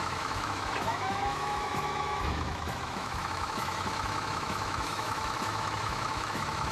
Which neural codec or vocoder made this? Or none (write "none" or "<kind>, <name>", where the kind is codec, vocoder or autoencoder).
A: autoencoder, DAC-VAE